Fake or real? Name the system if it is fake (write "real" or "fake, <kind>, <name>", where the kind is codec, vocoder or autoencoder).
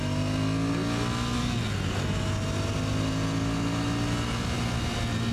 real